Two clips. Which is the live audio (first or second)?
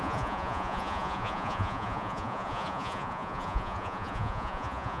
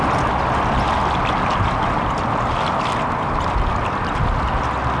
second